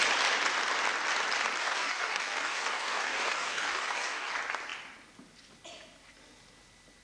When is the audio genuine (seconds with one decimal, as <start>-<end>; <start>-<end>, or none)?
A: 0.0-1.6; 4.3-7.0